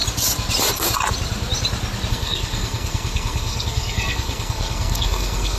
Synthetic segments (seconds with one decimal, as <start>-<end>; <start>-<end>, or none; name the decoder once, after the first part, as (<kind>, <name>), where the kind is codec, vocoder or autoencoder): 2.1-5.6 (codec, SNAC)